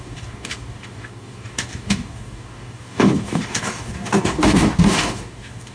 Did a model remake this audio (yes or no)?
yes